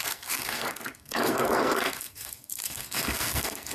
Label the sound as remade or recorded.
remade